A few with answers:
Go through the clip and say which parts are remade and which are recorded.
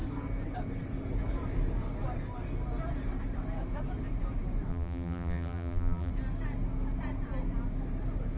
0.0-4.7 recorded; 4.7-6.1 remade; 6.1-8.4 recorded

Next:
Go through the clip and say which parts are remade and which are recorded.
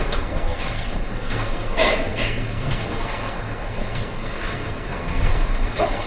0.0-6.1 remade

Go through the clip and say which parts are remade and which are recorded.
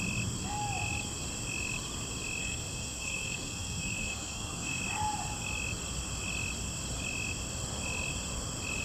0.0-2.4 recorded; 2.4-4.8 remade; 4.8-8.8 recorded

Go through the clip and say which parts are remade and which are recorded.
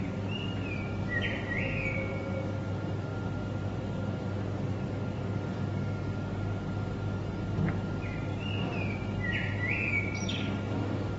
0.0-11.2 recorded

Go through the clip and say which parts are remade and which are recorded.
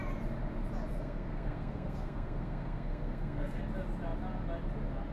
0.0-0.9 recorded; 0.9-3.6 remade; 3.6-5.1 recorded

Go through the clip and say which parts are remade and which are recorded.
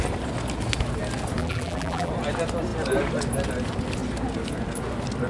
0.0-1.4 recorded; 1.4-2.1 remade; 2.1-5.3 recorded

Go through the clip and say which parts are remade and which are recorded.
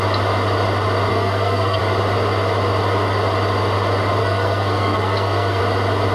0.0-1.1 recorded; 1.1-1.8 remade; 1.8-4.2 recorded; 4.2-5.6 remade; 5.6-6.1 recorded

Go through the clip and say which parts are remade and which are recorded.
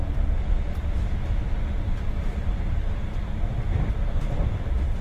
0.0-1.2 recorded; 1.2-4.2 remade; 4.2-5.0 recorded